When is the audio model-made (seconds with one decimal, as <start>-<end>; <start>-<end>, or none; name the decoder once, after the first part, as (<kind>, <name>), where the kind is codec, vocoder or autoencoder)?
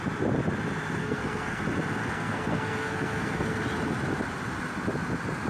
1.0-1.6 (codec, SNAC); 2.0-3.6